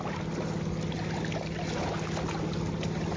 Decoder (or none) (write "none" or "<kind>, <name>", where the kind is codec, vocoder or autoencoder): none